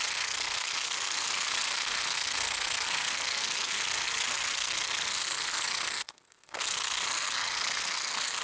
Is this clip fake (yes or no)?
yes